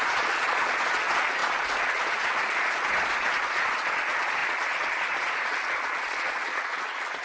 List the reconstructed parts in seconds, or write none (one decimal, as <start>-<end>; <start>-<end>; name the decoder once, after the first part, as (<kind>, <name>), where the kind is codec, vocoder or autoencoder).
0.0-7.2 (vocoder, Vocos)

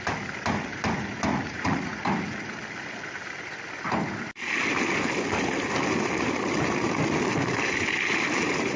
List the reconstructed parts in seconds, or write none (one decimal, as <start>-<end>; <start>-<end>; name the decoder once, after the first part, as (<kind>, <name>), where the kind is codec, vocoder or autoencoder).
1.3-2.0 (vocoder, Vocos)